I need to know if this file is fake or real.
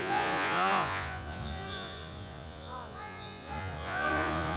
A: fake